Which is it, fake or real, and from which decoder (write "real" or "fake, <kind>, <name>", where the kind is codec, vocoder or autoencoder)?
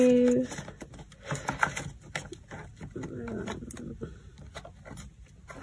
real